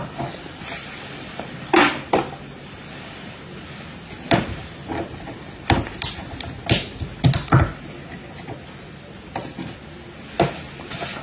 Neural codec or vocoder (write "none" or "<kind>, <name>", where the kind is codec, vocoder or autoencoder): none